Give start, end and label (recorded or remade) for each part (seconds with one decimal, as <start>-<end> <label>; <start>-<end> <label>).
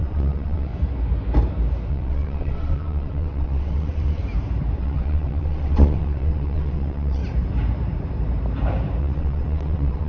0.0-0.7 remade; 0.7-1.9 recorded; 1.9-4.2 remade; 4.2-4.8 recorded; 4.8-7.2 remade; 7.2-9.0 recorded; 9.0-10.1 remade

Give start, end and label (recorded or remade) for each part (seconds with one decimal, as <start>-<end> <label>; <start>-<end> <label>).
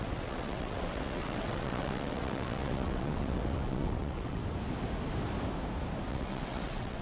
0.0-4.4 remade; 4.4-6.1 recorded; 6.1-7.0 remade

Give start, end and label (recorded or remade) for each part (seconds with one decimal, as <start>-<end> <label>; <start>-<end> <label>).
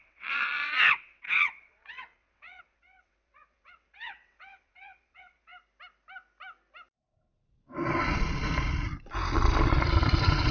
0.0-5.5 remade; 5.5-10.5 recorded